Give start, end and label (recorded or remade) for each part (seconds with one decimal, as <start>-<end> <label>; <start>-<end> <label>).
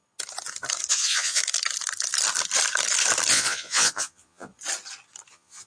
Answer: 0.0-0.9 recorded; 0.9-1.4 remade; 1.4-3.3 recorded; 3.3-4.5 remade; 4.5-5.3 recorded; 5.3-5.7 remade